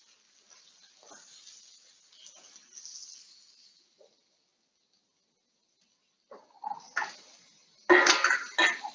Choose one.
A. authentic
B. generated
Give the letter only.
A